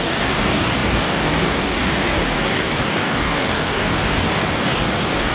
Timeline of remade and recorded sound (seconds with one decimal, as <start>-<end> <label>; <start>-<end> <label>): 0.0-5.3 remade